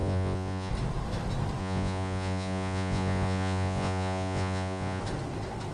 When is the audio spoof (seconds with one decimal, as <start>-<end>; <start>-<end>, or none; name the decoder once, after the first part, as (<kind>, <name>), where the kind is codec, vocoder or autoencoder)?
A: 0.0-0.7 (vocoder, Vocos); 1.6-5.0